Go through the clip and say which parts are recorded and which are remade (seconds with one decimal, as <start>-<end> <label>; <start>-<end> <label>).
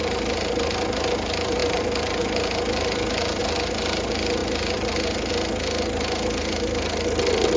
0.0-7.6 recorded